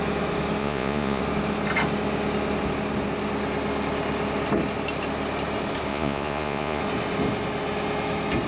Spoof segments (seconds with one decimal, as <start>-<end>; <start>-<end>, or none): 0.6-1.2; 5.9-6.8